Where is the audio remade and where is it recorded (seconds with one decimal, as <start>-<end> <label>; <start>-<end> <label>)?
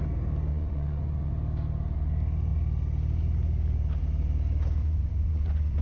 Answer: 0.0-0.5 recorded; 0.5-1.3 remade; 1.3-4.8 recorded; 4.8-5.8 remade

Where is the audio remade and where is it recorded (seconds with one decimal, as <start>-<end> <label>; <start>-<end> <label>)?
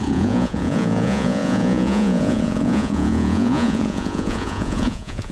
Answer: 0.0-5.3 remade